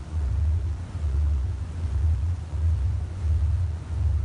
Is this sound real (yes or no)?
no